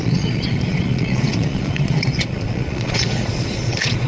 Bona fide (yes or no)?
no